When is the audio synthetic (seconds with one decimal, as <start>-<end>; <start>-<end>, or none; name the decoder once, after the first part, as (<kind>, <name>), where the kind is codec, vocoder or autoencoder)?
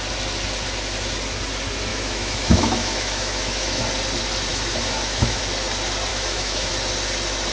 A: 1.9-3.8 (autoencoder, DAC-VAE); 4.5-5.4; 6.1-6.7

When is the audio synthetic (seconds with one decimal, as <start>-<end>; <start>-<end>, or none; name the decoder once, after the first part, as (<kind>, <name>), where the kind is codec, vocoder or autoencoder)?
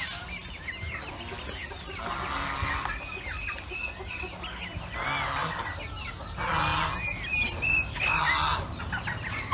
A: none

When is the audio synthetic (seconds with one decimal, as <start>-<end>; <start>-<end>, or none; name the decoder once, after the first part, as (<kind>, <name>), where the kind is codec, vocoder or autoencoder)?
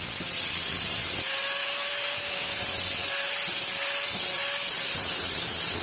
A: 1.6-2.6 (autoencoder, DAC-VAE)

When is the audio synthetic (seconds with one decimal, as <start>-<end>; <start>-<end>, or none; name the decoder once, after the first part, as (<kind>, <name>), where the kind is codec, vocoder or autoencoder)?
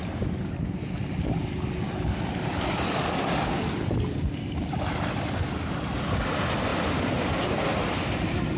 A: none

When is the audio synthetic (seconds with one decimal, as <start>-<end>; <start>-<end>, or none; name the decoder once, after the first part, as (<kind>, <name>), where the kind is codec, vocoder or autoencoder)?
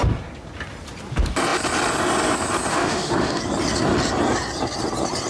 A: 2.7-3.4 (autoencoder, DAC-VAE)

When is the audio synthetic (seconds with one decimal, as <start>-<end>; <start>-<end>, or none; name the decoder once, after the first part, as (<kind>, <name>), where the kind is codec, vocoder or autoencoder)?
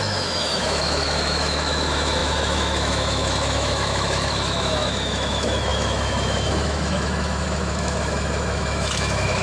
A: 0.0-9.4 (autoencoder, DAC-VAE)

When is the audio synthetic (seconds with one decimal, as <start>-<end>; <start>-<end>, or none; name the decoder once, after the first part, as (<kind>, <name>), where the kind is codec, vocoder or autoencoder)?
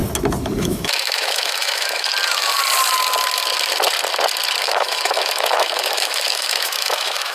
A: 0.6-2.1 (autoencoder, DAC-VAE); 4.6-7.3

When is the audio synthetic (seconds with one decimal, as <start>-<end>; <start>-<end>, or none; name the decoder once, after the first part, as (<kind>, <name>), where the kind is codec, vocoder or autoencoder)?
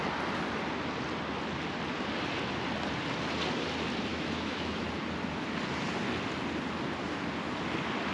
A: 4.1-4.8 (autoencoder, DAC-VAE)